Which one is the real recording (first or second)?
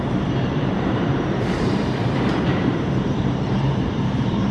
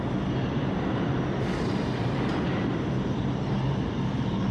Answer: second